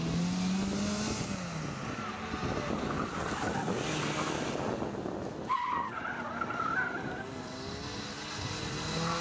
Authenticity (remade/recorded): recorded